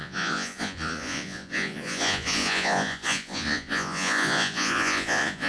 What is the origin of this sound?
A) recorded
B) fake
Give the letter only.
B